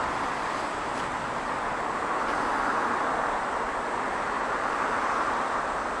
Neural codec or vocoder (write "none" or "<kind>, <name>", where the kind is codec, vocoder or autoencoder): none